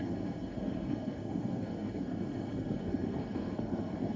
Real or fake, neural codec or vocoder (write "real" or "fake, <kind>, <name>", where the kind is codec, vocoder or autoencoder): fake, codec, SNAC